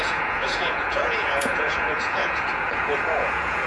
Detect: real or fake fake